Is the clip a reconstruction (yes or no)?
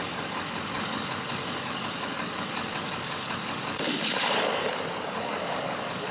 yes